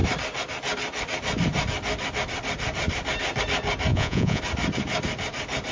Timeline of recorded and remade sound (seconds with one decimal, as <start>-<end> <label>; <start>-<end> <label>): 0.0-3.9 recorded; 3.9-4.4 remade; 4.4-5.7 recorded